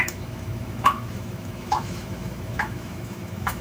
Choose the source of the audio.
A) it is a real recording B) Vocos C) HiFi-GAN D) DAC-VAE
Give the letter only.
D